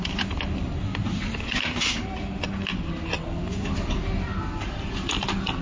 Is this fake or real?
real